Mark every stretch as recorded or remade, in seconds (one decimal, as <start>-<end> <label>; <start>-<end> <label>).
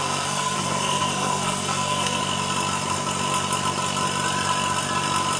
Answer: 0.0-2.2 remade; 2.2-5.4 recorded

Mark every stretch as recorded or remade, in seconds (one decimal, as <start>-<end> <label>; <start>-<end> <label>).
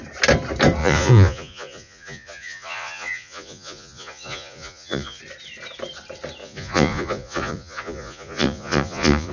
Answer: 0.0-0.8 recorded; 0.8-5.2 remade; 5.2-6.4 recorded; 6.4-9.3 remade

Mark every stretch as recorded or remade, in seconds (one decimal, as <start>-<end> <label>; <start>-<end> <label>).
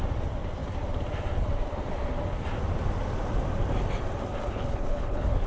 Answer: 0.0-4.4 recorded; 4.4-5.5 remade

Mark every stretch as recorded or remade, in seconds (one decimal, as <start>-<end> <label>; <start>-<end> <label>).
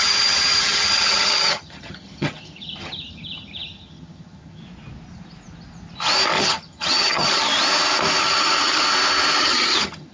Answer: 0.0-4.6 remade; 4.6-6.4 recorded; 6.4-7.5 remade; 7.5-8.2 recorded; 8.2-8.8 remade; 8.8-9.4 recorded; 9.4-10.1 remade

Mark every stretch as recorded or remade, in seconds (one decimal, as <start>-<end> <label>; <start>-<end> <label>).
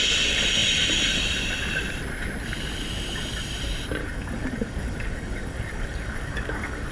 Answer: 0.0-4.0 recorded; 4.0-6.9 remade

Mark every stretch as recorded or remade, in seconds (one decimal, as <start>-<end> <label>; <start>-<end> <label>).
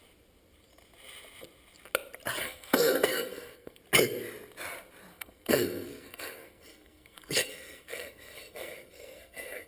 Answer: 0.0-2.4 recorded; 2.4-3.8 remade; 3.8-5.1 recorded; 5.1-9.7 remade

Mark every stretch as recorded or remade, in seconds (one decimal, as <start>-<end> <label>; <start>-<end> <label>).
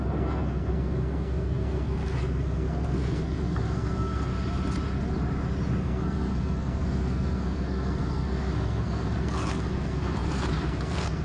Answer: 0.0-4.3 remade; 4.3-5.8 recorded; 5.8-11.2 remade